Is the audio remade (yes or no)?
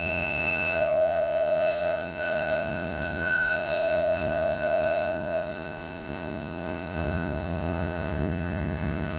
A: yes